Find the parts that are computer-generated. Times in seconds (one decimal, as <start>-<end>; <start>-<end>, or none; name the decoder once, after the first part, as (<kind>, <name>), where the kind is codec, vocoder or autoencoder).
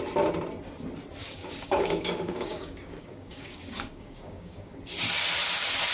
1.2-4.7 (codec, DAC)